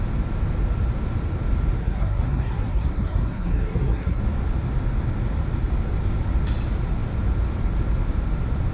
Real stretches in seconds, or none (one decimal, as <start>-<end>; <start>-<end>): 0.0-1.8; 4.2-8.7